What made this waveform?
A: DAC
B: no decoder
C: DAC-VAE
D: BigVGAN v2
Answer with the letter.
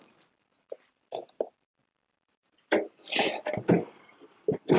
D